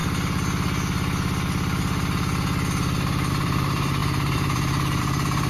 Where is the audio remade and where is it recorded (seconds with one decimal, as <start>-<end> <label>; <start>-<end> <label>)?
0.0-3.3 recorded; 3.3-5.5 remade